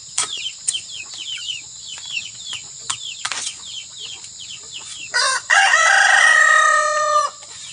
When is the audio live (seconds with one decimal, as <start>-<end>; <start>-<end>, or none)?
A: none